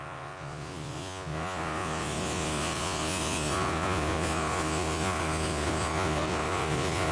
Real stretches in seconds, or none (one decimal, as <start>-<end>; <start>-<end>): none